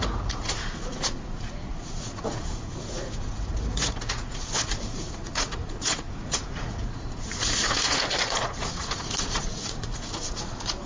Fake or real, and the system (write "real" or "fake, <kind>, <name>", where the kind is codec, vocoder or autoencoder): fake, vocoder, Vocos